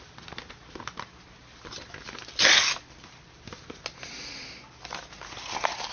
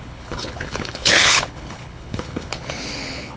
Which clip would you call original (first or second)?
first